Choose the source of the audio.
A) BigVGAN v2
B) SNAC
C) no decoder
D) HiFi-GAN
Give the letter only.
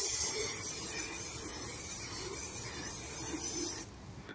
C